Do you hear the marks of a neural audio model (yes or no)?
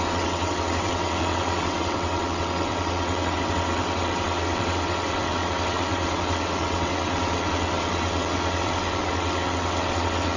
yes